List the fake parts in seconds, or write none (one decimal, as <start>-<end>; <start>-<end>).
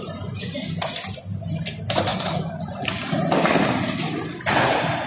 none